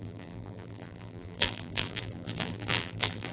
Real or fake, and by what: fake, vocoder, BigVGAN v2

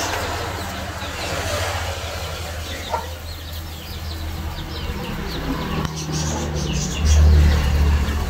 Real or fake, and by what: real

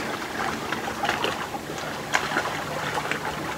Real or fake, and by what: real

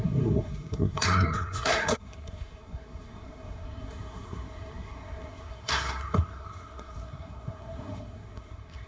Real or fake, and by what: fake, codec, SNAC